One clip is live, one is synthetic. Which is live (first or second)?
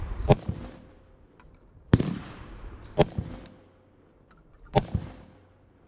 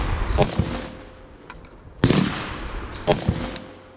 second